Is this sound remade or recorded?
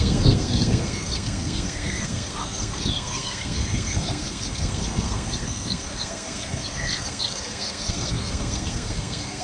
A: remade